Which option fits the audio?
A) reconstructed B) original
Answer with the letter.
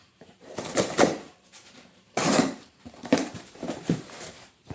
A